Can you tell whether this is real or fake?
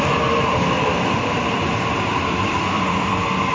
real